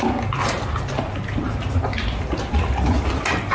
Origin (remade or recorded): recorded